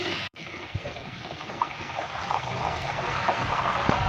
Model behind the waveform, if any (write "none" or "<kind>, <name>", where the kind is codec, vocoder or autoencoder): codec, SNAC